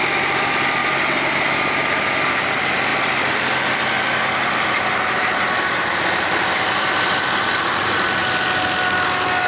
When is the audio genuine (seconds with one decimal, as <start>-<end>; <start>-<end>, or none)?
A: 0.0-9.5